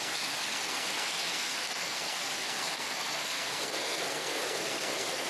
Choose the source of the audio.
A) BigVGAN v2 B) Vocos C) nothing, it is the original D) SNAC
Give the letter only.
D